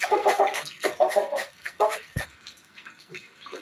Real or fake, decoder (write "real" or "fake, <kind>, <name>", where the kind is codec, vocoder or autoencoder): fake, codec, SNAC